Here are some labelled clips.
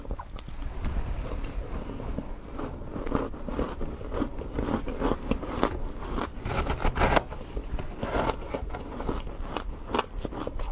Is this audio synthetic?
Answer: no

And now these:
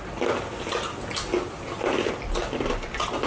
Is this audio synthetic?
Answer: no